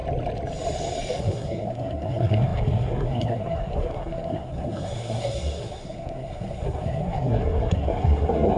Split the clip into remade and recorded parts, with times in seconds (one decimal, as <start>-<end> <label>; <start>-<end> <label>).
0.0-1.2 recorded; 1.2-8.6 remade